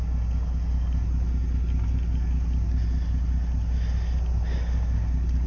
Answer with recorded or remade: recorded